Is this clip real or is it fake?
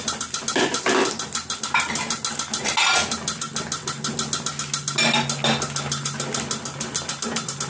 real